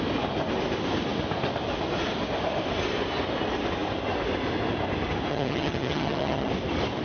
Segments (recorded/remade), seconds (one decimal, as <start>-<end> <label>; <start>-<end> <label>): 0.0-5.3 recorded; 5.3-6.5 remade; 6.5-7.0 recorded